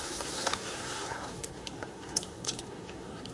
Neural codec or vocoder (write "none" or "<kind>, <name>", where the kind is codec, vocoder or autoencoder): codec, SNAC